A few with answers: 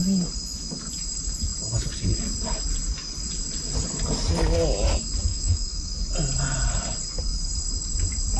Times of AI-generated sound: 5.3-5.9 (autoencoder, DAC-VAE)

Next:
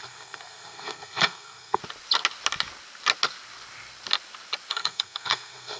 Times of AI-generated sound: 0.0-1.8 (codec, SNAC); 4.7-5.8

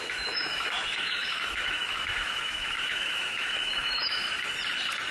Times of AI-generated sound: 0.0-4.2 (autoencoder, DAC-VAE)